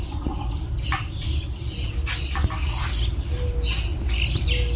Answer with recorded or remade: recorded